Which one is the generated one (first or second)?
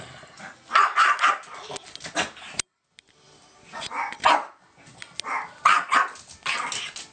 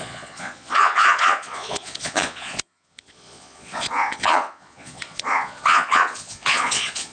second